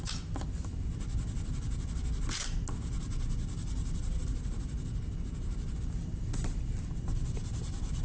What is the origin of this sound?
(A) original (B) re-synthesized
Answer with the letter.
A